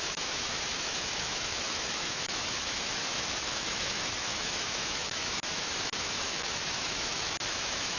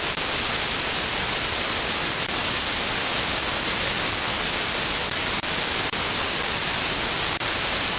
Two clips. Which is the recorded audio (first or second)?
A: second